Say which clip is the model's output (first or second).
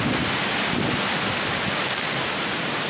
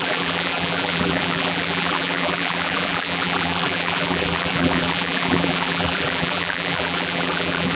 second